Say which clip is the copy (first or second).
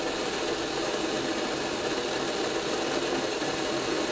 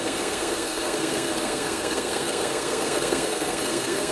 second